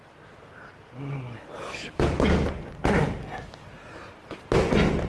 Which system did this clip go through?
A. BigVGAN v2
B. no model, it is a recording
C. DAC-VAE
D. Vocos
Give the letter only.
B